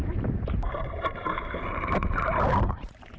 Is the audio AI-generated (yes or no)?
yes